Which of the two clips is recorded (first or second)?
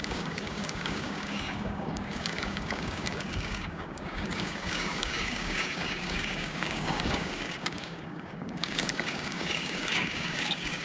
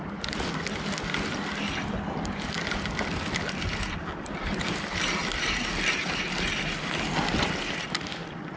second